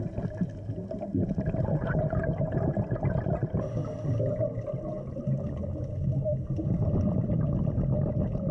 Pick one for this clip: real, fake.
real